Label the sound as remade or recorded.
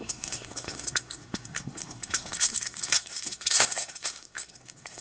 remade